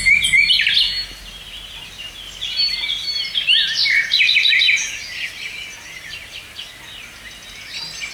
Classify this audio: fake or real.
real